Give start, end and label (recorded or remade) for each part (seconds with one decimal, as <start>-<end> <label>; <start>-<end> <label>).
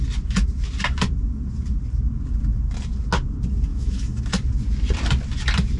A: 0.0-3.7 recorded; 3.7-4.2 remade; 4.2-5.8 recorded